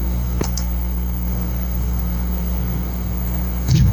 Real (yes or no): no